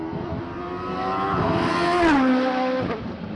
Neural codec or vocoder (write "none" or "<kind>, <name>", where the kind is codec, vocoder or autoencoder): none